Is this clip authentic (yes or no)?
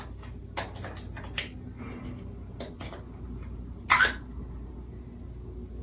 yes